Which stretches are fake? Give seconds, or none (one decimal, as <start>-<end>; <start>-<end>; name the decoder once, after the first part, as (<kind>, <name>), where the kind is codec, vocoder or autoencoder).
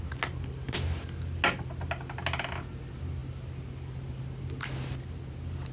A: none